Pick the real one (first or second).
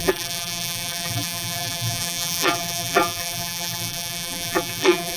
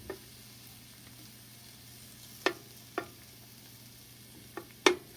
second